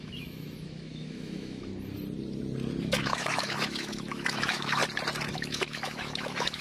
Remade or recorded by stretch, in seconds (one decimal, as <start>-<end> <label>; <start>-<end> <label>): 0.0-1.7 remade; 1.7-2.8 recorded; 2.8-4.8 remade; 4.8-5.3 recorded; 5.3-6.6 remade